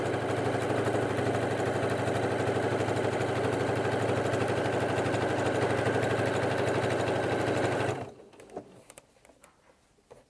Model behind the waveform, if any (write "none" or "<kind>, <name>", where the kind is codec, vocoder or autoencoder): none